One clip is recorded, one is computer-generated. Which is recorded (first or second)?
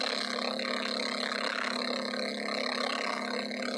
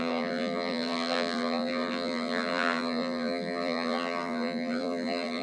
first